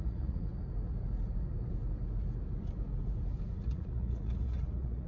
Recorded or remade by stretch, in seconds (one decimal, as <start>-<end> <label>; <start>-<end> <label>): 0.0-0.5 remade; 0.5-3.6 recorded; 3.6-5.1 remade